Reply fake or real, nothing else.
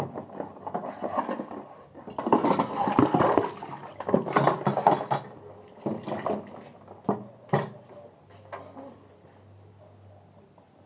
real